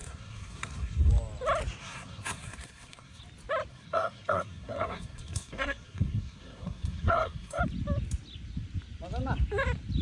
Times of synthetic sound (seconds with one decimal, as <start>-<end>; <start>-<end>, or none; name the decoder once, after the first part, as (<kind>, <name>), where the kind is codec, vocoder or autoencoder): 0.0-1.1 (codec, SNAC); 1.8-3.2; 3.7-7.6